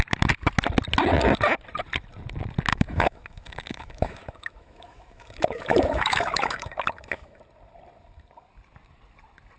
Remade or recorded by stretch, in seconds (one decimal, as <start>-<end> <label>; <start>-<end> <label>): 0.0-2.7 recorded; 2.7-7.4 remade; 7.4-9.6 recorded